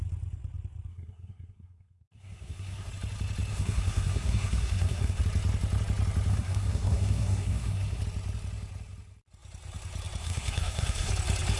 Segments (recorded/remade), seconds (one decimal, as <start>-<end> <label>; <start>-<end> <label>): 0.0-0.9 recorded; 0.9-2.9 remade; 2.9-3.5 recorded; 3.5-5.2 remade; 5.2-6.3 recorded; 6.3-8.0 remade; 8.0-10.2 recorded; 10.2-11.1 remade; 11.1-11.6 recorded